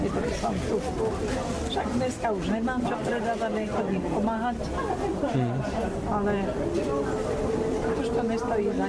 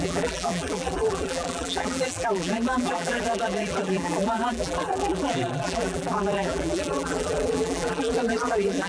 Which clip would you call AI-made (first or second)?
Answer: second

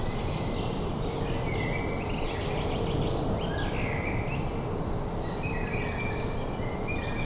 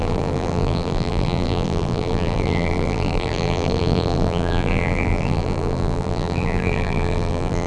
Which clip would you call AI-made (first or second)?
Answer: second